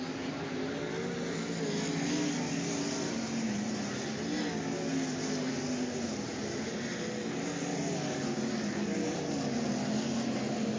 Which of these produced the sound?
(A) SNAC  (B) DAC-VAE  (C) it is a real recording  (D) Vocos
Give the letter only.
C